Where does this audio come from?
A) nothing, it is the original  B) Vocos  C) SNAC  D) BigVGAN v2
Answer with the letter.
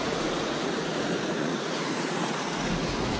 B